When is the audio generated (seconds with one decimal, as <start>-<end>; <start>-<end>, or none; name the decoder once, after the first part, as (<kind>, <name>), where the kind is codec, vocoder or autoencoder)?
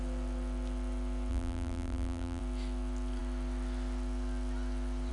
1.3-2.4 (vocoder, BigVGAN v2)